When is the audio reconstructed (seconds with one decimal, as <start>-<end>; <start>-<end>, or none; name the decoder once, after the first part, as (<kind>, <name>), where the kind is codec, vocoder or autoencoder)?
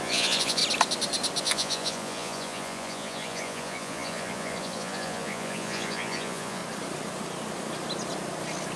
0.0-0.6 (vocoder, Vocos); 1.4-6.6